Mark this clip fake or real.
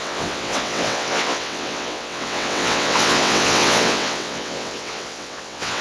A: fake